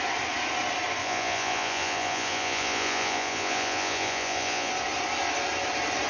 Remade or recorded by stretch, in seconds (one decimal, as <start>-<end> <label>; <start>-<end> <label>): 0.0-1.0 recorded; 1.0-4.7 remade; 4.7-6.1 recorded